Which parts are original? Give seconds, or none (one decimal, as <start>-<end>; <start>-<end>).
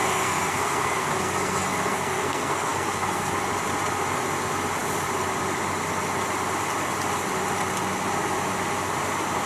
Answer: 3.4-9.5